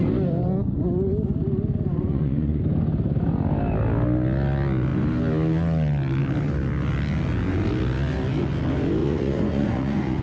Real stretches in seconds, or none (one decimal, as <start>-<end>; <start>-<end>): 0.0-1.9; 2.6-9.0